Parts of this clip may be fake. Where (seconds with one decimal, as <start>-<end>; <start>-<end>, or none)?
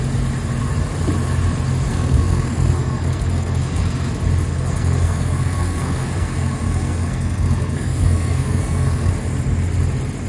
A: 1.9-4.1; 4.5-9.1